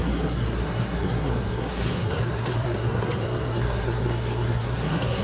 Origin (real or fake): fake